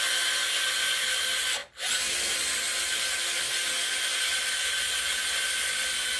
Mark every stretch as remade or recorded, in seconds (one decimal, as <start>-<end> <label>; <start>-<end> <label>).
0.0-4.3 recorded; 4.3-5.1 remade; 5.1-6.2 recorded

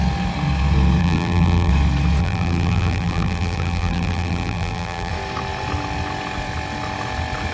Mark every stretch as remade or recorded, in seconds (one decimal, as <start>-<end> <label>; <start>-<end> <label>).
0.0-1.0 recorded; 1.0-1.7 remade; 1.7-2.2 recorded; 2.2-5.1 remade; 5.1-7.5 recorded

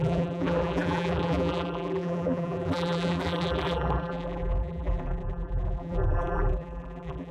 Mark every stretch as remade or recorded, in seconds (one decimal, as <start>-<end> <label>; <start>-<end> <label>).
0.0-7.3 remade

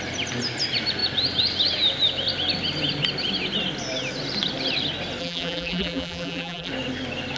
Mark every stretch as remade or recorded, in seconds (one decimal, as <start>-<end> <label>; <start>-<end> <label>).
0.0-5.2 recorded; 5.2-6.7 remade; 6.7-7.4 recorded

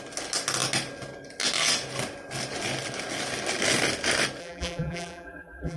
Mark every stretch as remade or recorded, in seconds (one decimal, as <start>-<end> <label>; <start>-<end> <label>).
0.0-4.4 recorded; 4.4-5.8 remade

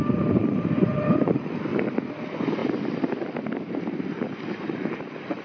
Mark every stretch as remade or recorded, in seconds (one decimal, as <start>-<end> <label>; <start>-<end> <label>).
0.0-0.4 recorded; 0.4-1.9 remade; 1.9-5.4 recorded

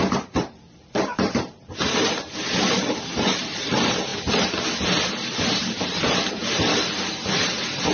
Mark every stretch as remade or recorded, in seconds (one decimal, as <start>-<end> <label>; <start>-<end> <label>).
0.0-4.1 remade; 4.1-5.1 recorded; 5.1-7.9 remade